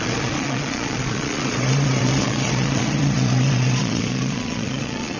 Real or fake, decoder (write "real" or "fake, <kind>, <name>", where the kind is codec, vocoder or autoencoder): fake, vocoder, Vocos